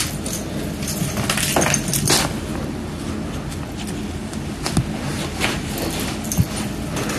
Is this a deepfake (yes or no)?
no